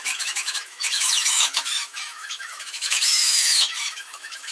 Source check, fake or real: fake